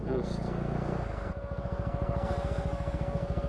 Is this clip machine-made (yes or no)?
yes